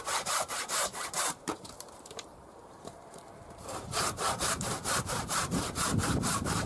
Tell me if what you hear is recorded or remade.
remade